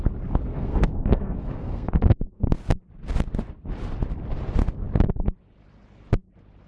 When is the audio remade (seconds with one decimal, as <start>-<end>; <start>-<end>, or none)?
0.5-2.6